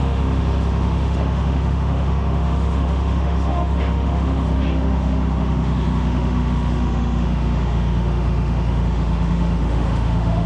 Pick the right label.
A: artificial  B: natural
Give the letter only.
A